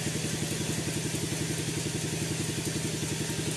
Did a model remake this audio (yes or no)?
no